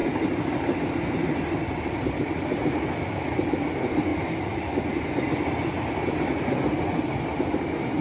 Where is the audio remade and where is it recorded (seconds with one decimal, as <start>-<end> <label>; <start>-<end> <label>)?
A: 0.0-8.0 recorded